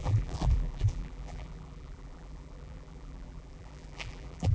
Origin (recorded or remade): remade